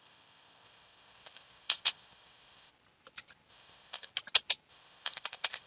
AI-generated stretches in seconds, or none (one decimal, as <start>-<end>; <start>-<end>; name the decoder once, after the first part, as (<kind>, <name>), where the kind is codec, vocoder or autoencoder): 0.0-2.7 (codec, ZipCodec); 3.5-4.1; 4.7-5.7